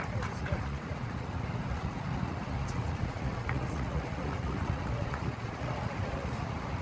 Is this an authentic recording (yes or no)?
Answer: no